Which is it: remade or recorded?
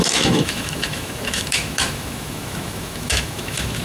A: remade